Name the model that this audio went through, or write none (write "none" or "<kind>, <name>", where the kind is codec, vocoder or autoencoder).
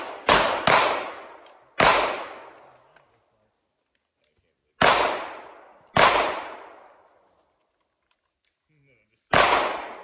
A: none